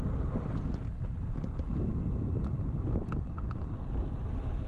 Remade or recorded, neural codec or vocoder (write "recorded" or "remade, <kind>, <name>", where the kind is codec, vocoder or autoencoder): recorded